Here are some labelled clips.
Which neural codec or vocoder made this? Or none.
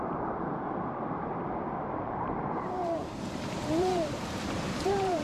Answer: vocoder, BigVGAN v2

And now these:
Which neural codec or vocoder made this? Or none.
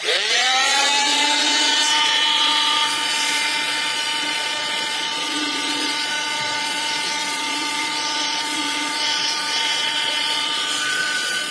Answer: vocoder, Vocos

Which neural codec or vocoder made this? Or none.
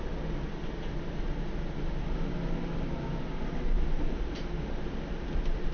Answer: none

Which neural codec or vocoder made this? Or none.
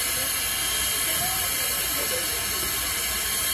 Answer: none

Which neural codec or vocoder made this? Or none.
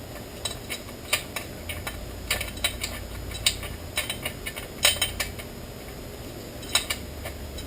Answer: none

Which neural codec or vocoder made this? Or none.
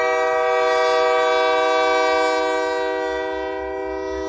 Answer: none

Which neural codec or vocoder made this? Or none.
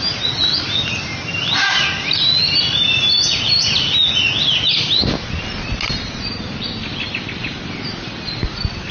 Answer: none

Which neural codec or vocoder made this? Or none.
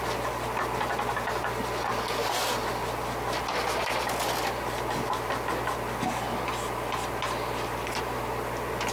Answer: none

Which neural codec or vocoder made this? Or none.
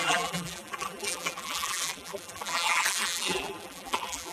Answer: vocoder, BigVGAN v2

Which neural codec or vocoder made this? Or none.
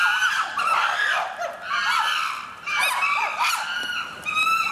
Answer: none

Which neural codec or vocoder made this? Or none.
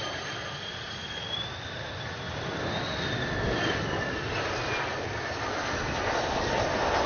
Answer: none